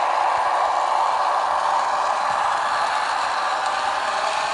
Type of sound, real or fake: real